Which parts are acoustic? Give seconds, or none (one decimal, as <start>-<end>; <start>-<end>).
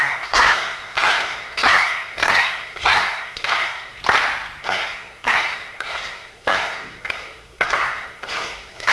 4.0-4.6